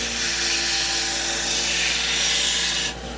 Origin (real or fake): real